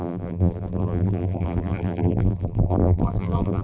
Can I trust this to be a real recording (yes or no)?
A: no